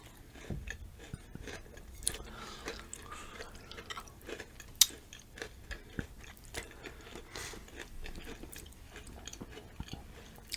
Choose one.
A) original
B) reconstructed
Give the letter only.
A